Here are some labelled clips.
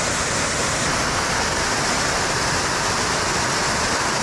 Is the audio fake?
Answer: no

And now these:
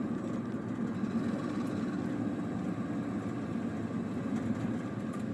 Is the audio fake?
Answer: no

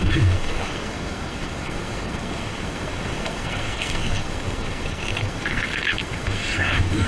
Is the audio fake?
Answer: yes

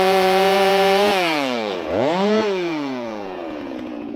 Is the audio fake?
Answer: yes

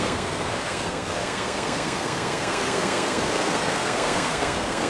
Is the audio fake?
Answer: yes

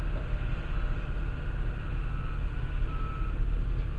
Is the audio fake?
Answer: no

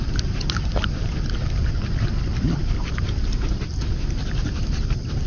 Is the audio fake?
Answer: yes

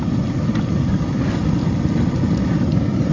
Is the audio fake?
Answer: no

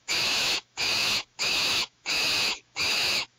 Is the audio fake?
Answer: yes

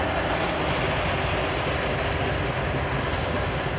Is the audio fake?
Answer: no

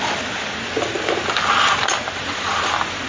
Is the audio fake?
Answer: no